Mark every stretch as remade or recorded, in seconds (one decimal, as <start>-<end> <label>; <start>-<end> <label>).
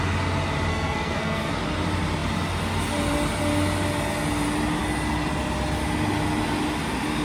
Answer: 0.0-0.7 recorded; 0.7-1.5 remade; 1.5-7.2 recorded